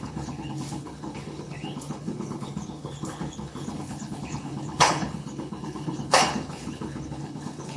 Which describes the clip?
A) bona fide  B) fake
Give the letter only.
B